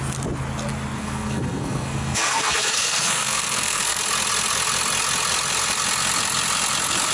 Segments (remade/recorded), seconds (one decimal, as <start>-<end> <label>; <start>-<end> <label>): 0.0-1.0 recorded; 1.0-4.0 remade; 4.0-7.1 recorded